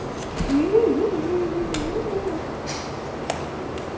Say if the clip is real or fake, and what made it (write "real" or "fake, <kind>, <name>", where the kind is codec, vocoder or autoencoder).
real